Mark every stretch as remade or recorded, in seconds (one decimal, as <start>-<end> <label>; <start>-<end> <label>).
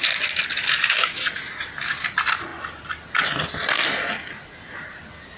0.0-5.4 recorded